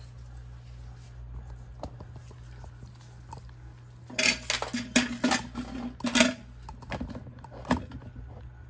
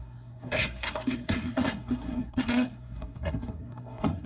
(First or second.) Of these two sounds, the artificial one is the second